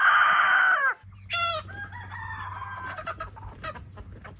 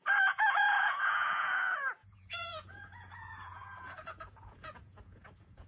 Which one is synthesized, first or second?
second